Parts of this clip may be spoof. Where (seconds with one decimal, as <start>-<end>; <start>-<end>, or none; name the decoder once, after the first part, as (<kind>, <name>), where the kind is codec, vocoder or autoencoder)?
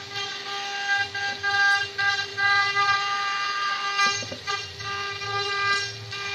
2.3-4.5 (vocoder, BigVGAN v2)